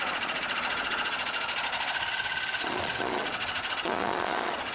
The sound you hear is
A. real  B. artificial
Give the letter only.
B